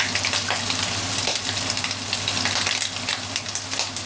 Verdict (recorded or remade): recorded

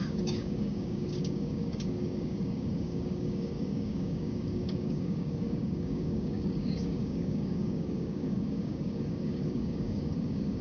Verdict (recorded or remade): remade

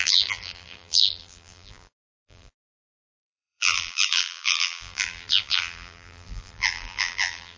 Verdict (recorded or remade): remade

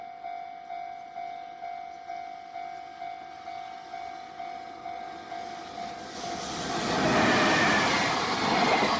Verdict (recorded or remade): recorded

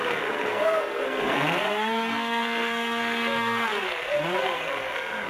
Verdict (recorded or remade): remade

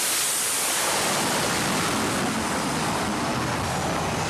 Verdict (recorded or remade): recorded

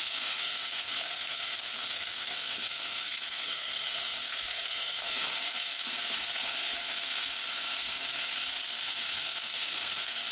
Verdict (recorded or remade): remade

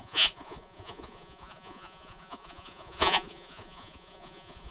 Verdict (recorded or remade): remade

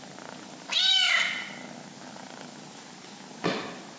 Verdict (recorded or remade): recorded